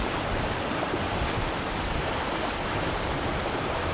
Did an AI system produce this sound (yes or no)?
no